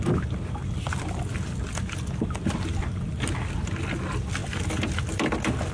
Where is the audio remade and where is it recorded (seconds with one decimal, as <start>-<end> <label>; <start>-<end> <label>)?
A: 0.0-5.7 recorded